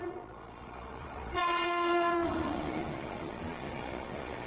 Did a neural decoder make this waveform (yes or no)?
yes